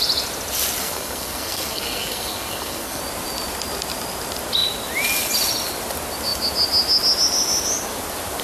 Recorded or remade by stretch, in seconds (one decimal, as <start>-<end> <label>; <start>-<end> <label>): 0.0-0.8 recorded; 0.8-3.0 remade; 3.0-8.4 recorded